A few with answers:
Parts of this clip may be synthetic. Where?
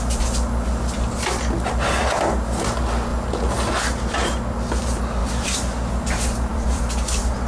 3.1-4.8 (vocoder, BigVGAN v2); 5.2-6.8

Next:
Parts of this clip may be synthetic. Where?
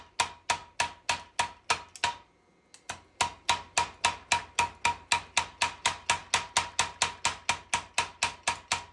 none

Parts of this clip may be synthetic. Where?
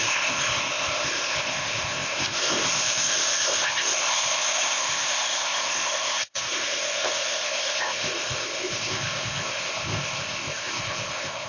0.0-11.5 (codec, ZipCodec)